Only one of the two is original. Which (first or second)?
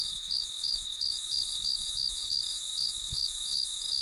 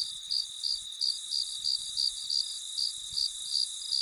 second